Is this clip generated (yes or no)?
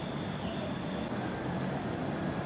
no